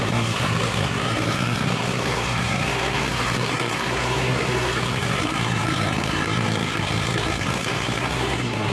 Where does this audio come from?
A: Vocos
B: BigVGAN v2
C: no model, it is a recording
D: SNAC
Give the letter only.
D